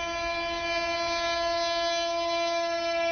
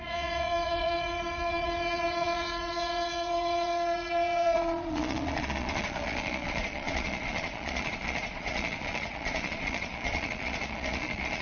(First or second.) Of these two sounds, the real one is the first